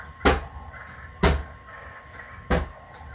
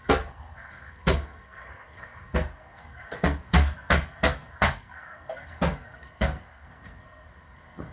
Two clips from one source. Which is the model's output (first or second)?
second